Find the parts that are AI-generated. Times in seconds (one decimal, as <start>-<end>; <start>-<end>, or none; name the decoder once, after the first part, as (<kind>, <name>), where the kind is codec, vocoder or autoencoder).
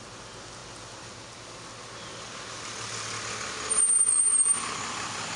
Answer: none